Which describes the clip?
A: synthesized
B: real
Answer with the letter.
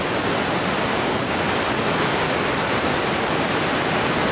B